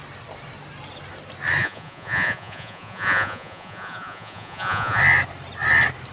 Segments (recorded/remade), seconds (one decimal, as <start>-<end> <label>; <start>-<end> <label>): 0.0-1.6 recorded; 1.6-5.0 remade; 5.0-6.1 recorded